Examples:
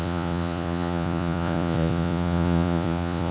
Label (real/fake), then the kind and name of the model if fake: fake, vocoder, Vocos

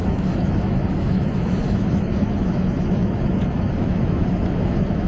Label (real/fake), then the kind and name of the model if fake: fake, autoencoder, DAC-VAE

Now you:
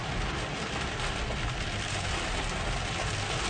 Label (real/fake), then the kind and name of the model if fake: real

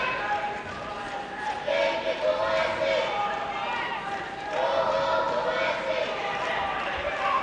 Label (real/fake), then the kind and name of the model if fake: real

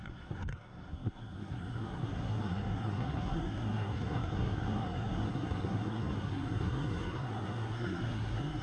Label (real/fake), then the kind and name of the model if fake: fake, codec, SNAC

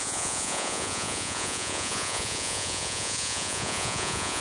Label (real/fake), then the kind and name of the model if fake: fake, vocoder, Vocos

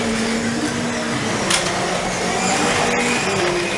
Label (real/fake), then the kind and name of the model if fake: real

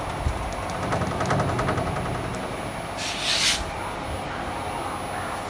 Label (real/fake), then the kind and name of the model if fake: real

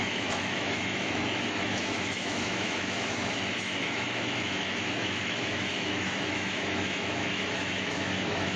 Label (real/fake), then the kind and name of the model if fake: fake, autoencoder, DAC-VAE